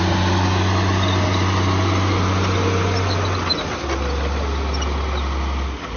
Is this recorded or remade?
recorded